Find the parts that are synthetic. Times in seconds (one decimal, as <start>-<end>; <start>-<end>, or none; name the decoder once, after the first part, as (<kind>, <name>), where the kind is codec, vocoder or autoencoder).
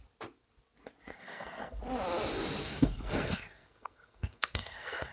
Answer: 1.1-1.8 (codec, SNAC); 2.6-5.1